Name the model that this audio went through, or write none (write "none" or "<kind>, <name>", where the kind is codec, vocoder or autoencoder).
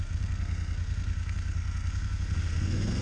codec, SNAC